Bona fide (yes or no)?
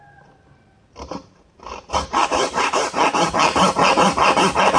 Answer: no